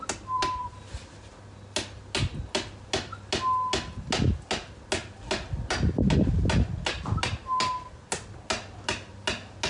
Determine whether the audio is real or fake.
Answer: real